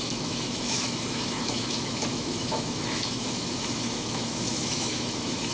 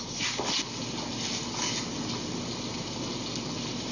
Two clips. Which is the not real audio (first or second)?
first